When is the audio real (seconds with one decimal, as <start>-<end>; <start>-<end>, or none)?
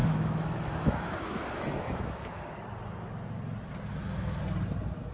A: 2.5-3.9; 4.4-5.1